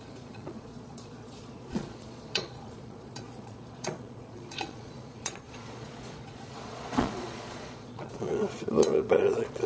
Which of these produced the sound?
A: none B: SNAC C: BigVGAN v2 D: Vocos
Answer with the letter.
D